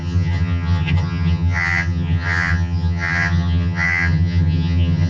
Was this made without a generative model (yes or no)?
no